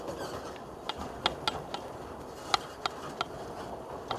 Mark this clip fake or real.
real